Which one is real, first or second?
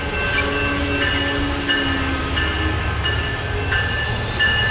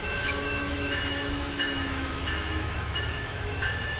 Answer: first